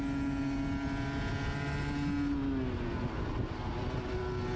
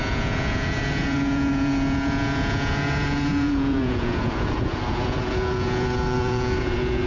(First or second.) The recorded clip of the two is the first